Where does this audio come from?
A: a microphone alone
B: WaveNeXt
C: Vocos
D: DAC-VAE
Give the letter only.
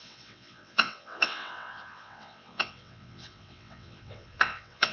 B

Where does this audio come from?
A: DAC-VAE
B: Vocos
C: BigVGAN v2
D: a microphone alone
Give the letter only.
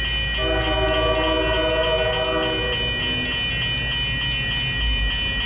D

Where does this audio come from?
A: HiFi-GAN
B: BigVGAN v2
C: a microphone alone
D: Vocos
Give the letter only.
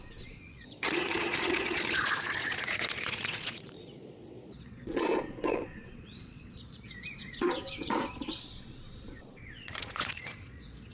D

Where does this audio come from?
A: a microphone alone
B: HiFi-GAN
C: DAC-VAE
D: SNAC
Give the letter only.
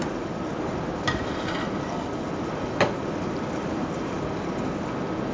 A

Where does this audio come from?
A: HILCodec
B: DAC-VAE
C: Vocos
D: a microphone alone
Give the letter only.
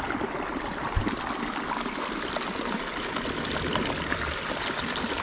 D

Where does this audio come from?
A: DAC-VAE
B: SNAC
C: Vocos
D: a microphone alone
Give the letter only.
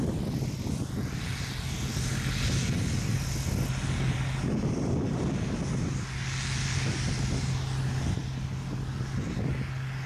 D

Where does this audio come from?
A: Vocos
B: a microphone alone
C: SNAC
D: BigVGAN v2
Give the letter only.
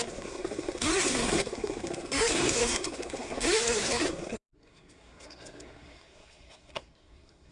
C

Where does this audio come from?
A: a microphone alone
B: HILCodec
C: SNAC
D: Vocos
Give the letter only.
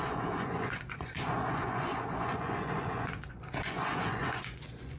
D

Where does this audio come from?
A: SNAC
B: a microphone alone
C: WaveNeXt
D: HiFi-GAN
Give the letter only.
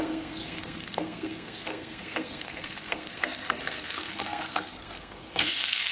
A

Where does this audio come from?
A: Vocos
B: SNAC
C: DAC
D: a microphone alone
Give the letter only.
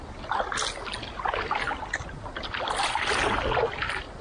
D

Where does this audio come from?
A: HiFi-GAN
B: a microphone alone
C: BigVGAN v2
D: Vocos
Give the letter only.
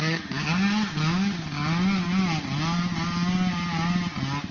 B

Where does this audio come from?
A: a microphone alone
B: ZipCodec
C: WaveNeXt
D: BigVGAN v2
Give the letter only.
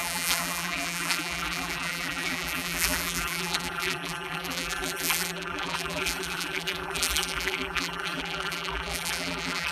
D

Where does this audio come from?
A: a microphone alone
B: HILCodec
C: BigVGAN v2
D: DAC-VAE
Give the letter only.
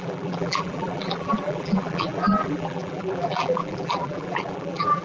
C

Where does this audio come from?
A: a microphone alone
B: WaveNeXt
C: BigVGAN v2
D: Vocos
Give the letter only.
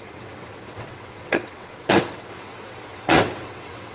B